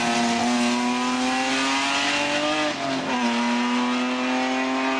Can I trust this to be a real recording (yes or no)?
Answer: yes